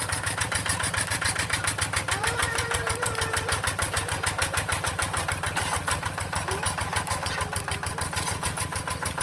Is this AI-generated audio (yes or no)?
yes